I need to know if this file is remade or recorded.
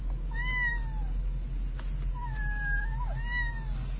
recorded